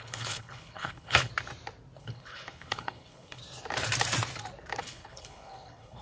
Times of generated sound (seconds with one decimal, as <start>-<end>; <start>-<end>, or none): 0.0-1.3; 2.0-3.4; 4.8-6.0